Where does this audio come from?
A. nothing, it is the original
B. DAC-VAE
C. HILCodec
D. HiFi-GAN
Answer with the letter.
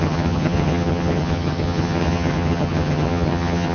D